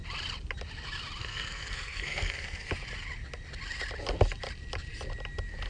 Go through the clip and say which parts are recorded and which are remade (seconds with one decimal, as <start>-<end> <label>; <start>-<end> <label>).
0.0-1.2 recorded; 1.2-2.7 remade; 2.7-5.7 recorded

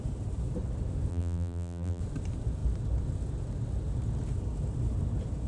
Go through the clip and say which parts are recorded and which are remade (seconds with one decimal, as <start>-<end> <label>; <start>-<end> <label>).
0.0-1.1 recorded; 1.1-2.0 remade; 2.0-5.5 recorded

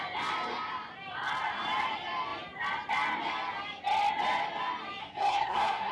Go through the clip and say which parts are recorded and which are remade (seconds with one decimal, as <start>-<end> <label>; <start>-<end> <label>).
0.0-5.0 recorded; 5.0-5.9 remade

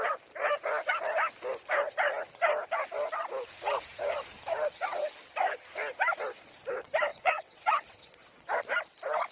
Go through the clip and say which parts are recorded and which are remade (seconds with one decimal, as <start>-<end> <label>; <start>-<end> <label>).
0.0-7.1 recorded; 7.1-8.6 remade; 8.6-9.3 recorded

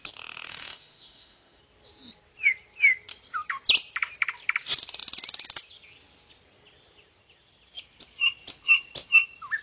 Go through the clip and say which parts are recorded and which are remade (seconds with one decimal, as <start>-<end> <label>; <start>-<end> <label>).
0.0-0.5 recorded; 0.5-1.6 remade; 1.6-9.6 recorded